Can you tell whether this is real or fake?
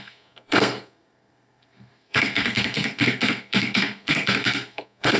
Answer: fake